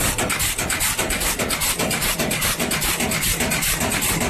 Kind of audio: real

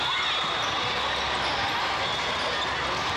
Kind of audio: real